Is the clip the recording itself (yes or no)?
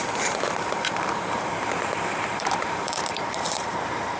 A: no